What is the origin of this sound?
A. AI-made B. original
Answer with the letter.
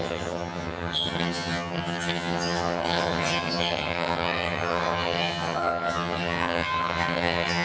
A